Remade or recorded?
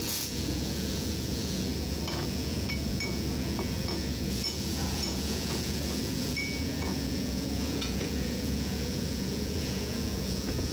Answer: remade